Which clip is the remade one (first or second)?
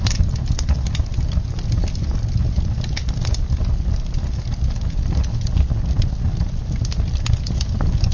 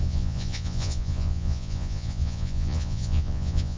second